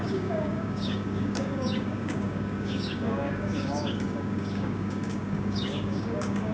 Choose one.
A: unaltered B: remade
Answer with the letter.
B